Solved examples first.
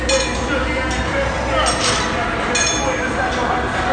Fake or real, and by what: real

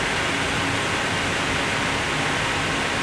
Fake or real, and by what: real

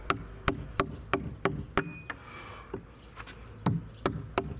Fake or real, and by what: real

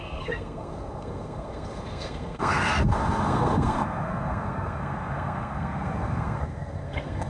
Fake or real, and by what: fake, codec, SNAC